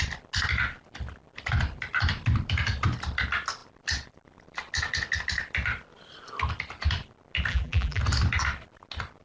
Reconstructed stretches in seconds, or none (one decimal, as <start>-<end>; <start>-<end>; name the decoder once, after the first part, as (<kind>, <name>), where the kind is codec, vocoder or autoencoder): 7.5-8.0 (vocoder, BigVGAN v2)